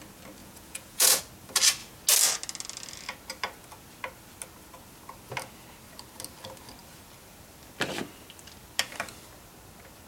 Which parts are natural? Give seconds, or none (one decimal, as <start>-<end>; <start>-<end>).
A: 0.0-0.4; 1.2-10.1